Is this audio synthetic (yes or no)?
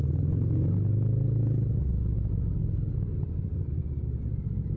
no